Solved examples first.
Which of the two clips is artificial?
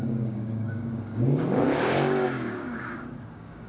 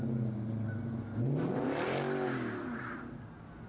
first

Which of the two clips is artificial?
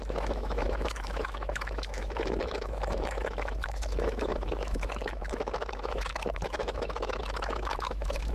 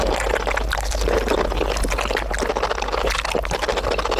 first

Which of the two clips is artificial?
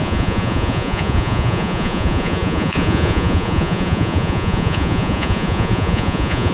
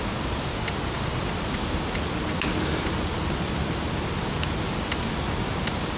first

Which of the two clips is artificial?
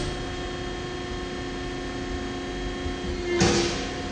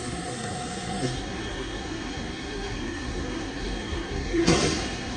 second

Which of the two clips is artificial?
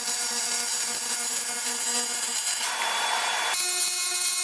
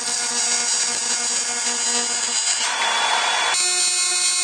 first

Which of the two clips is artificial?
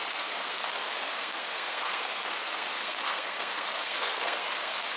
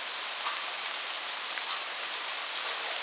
first